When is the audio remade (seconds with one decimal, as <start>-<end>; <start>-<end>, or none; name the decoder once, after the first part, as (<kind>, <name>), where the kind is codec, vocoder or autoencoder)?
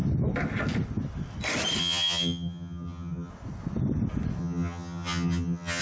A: 1.8-3.3 (vocoder, HiFi-GAN); 4.4-5.8